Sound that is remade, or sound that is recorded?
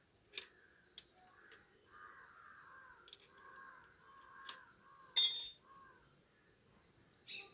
recorded